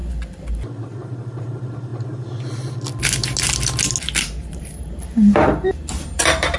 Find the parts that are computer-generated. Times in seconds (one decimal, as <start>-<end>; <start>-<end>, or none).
0.5-1.9; 4.2-6.6